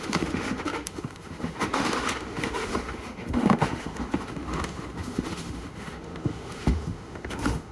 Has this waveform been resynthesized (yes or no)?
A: yes